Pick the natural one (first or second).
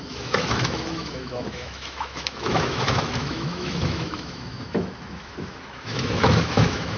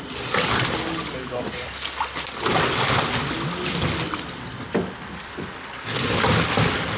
second